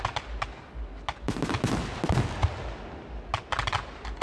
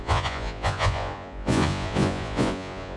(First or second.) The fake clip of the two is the second